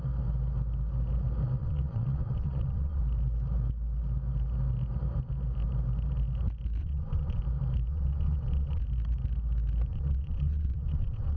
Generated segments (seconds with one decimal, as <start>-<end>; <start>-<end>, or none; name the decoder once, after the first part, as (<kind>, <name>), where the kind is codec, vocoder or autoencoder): 1.6-3.0 (vocoder, WaveNeXt); 6.8-7.4; 7.9-8.8; 9.9-11.4